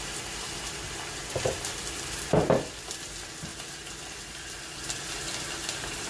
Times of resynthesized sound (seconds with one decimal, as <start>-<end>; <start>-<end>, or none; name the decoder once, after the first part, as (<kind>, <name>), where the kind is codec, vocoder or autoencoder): 0.0-3.5 (vocoder, BigVGAN v2); 4.7-6.1